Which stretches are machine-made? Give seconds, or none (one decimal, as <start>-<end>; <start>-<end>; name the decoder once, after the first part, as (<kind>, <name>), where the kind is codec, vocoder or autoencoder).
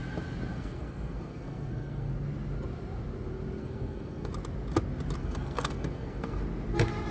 0.5-2.1 (codec, SNAC); 3.6-4.3; 5.2-6.4